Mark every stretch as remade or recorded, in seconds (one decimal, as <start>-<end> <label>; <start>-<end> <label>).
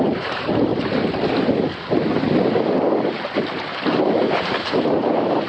0.0-0.7 remade; 0.7-4.0 recorded; 4.0-5.5 remade